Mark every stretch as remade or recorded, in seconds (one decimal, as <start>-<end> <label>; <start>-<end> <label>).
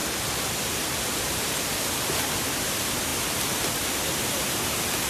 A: 0.0-5.1 recorded